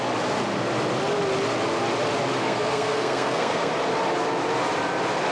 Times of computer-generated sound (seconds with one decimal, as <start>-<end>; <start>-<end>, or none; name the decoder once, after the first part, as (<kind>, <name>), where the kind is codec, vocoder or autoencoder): 2.4-3.7 (codec, SNAC)